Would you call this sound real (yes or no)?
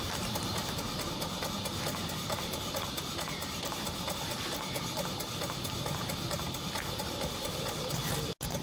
yes